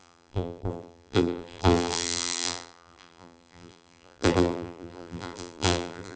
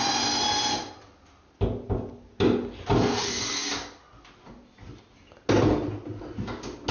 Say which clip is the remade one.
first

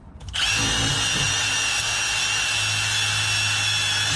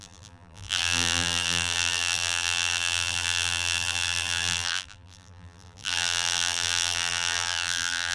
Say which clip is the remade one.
second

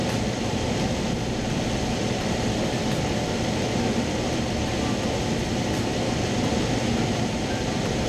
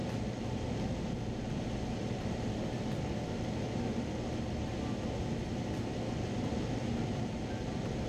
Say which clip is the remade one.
first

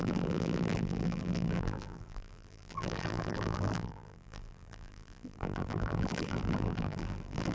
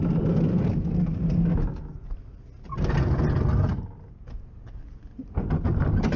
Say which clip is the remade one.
first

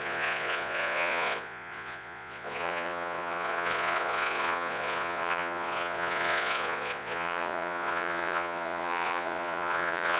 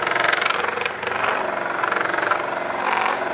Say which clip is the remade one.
first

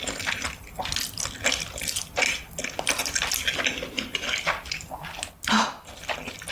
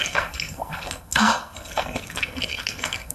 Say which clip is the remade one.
second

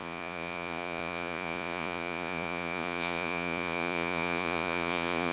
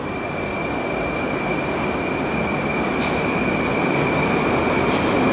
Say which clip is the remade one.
first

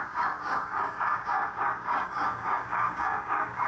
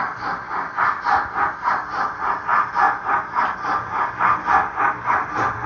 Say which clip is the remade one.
first